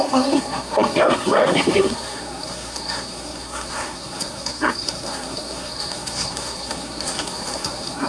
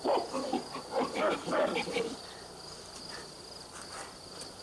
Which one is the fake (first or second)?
first